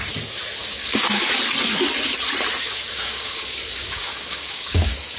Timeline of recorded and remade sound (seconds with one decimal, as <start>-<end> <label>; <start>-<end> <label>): 0.0-0.6 recorded; 0.6-1.3 remade; 1.3-2.6 recorded; 2.6-5.2 remade